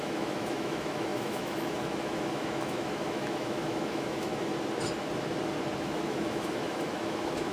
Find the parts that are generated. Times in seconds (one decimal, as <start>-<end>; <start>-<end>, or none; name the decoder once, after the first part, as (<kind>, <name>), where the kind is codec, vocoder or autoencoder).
0.0-4.5 (autoencoder, DAC-VAE); 5.8-7.5